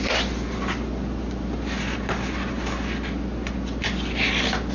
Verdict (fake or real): real